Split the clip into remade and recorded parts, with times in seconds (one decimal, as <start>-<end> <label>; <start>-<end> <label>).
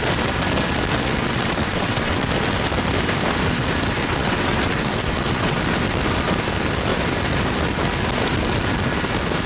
0.0-1.0 recorded; 1.0-2.3 remade; 2.3-4.0 recorded; 4.0-5.6 remade; 5.6-9.5 recorded